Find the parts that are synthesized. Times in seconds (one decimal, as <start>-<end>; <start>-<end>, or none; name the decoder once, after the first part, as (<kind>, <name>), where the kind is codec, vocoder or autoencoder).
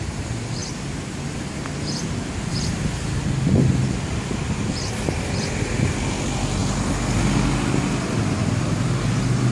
none